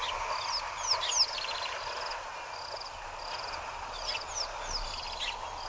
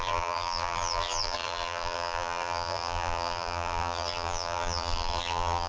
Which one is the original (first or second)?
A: first